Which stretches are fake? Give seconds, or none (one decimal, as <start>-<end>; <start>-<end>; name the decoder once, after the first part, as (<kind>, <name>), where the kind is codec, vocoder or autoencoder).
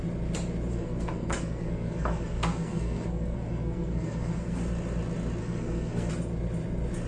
0.7-4.6 (codec, SNAC); 5.4-6.1